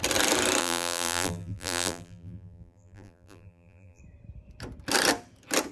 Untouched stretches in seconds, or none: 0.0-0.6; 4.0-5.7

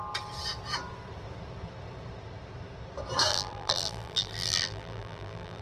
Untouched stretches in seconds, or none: 0.0-3.3

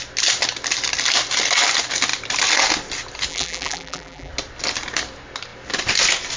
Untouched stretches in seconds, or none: 0.0-3.3; 4.3-6.4

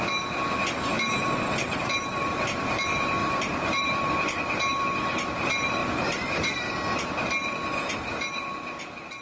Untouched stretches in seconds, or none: 0.0-3.2; 4.1-5.8; 6.7-9.2

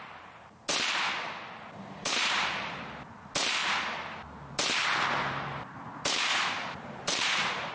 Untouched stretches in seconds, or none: 0.0-2.0; 2.9-6.3

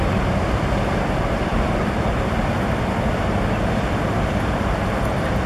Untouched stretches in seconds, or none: none

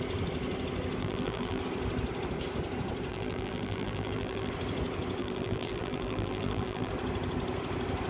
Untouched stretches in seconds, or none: 0.0-1.0; 1.6-3.1; 4.5-5.2; 6.9-8.1